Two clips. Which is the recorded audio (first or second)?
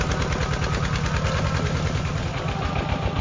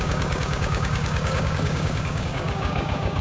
first